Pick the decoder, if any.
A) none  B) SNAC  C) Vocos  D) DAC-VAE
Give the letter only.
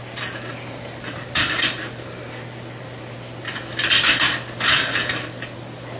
A